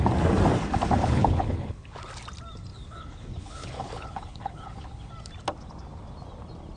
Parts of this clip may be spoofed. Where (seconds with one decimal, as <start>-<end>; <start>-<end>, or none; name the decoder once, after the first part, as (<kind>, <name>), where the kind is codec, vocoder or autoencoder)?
1.0-2.1 (codec, HILCodec); 2.7-5.1